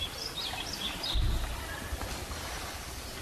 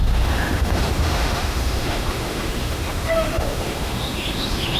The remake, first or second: second